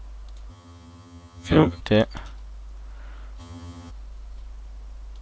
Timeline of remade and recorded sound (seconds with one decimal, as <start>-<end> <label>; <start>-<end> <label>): 0.0-0.5 recorded; 0.5-1.8 remade; 1.8-3.4 recorded; 3.4-3.9 remade; 3.9-5.2 recorded